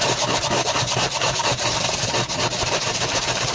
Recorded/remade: remade